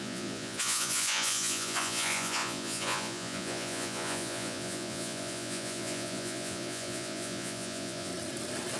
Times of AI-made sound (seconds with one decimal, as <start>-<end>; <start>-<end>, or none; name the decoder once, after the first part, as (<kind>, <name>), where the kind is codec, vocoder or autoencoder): 0.0-8.1 (vocoder, Vocos)